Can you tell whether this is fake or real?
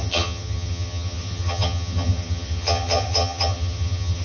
fake